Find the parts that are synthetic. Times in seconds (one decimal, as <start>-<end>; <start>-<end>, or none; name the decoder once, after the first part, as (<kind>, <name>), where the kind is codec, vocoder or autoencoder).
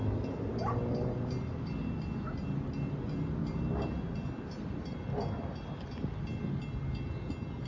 none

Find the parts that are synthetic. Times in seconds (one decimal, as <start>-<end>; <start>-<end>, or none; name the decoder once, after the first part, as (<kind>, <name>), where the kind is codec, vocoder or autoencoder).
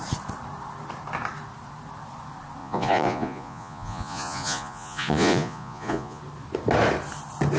2.6-6.2 (vocoder, Vocos)